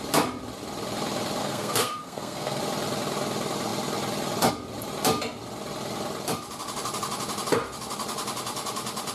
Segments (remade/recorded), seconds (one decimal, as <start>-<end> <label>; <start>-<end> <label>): 0.0-1.4 recorded; 1.4-2.6 remade; 2.6-9.1 recorded